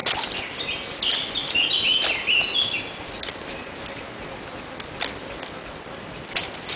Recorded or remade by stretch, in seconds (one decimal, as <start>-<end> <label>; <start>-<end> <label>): 0.0-6.8 recorded

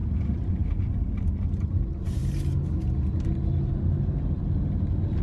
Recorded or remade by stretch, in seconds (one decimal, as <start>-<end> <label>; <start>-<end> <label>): 0.0-0.8 remade; 0.8-5.2 recorded

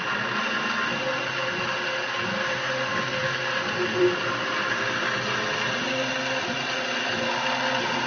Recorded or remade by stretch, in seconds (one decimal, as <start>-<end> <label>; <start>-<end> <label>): 0.0-8.1 recorded

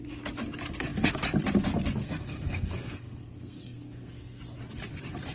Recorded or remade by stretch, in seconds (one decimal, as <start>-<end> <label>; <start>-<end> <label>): 0.0-2.0 recorded; 2.0-4.4 remade; 4.4-5.3 recorded